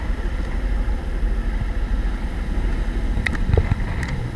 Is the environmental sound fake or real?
real